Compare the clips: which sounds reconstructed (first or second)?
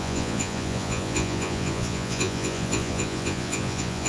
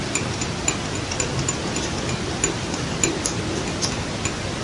first